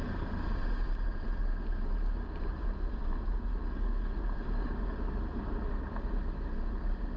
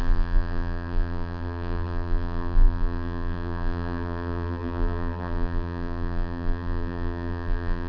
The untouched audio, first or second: first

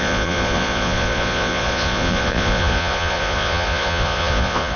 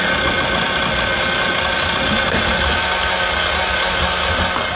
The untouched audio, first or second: second